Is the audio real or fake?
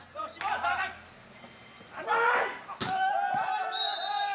real